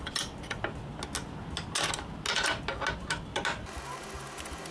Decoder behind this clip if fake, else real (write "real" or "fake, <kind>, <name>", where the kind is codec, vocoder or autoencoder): real